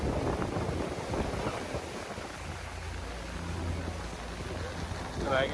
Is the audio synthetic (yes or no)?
no